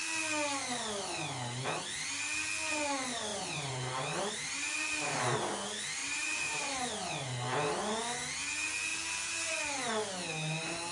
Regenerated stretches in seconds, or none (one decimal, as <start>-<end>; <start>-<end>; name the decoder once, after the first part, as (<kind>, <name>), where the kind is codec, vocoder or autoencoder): 3.3-5.2 (vocoder, BigVGAN v2); 6.0-6.9